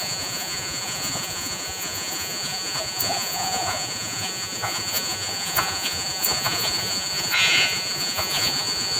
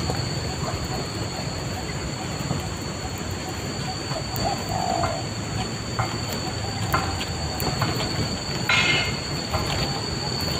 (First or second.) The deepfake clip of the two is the first